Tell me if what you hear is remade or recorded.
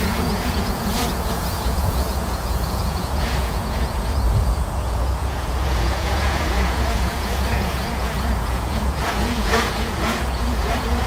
remade